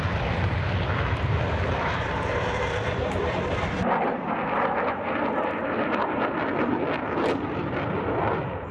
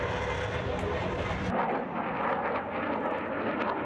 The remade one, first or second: first